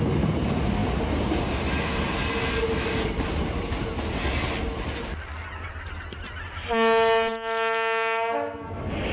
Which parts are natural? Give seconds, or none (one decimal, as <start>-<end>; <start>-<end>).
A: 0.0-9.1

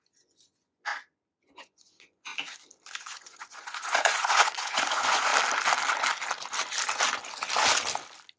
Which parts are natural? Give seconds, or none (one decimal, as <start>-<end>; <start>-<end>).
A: 0.9-1.4; 2.3-3.0; 5.3-8.4

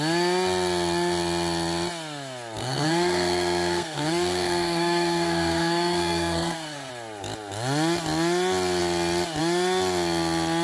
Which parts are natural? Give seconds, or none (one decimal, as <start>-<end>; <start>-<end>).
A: 0.0-2.6; 6.9-10.6